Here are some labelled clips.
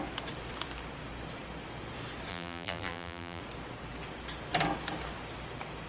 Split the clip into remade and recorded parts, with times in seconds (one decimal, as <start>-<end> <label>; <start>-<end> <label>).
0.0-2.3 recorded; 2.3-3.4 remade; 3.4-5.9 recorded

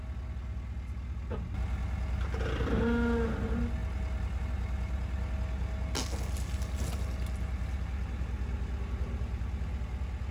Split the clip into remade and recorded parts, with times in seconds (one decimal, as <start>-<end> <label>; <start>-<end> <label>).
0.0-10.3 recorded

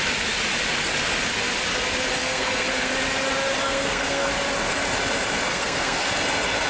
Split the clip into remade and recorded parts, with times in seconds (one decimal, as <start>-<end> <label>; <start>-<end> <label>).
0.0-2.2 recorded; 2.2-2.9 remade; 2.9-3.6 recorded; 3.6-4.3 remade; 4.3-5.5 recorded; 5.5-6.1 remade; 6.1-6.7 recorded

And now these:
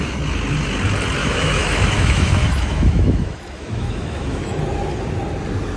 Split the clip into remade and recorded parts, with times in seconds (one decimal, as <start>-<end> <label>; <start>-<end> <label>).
0.0-1.2 recorded; 1.2-4.6 remade; 4.6-5.8 recorded

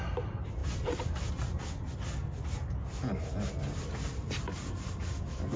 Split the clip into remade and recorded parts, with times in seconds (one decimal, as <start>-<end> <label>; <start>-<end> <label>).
0.0-0.6 recorded; 0.6-1.3 remade; 1.3-5.6 recorded

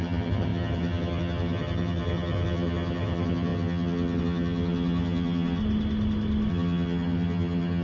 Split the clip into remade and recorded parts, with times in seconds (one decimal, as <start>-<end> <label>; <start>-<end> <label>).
0.0-5.6 remade; 5.6-6.5 recorded; 6.5-7.8 remade

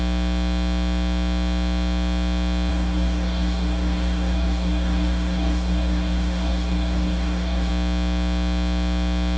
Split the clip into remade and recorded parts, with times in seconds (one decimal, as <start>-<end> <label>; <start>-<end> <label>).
0.0-2.7 recorded; 2.7-7.7 remade; 7.7-9.4 recorded